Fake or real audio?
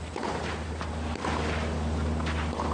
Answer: real